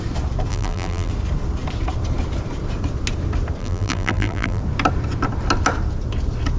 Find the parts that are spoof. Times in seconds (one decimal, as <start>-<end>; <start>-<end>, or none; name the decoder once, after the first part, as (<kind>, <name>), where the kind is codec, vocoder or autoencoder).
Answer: 0.5-1.1 (vocoder, BigVGAN v2); 3.6-4.6